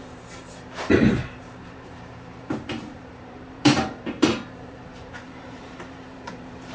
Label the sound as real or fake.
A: fake